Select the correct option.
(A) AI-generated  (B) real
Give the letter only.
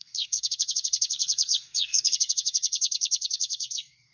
A